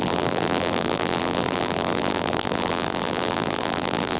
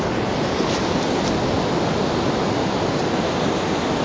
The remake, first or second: first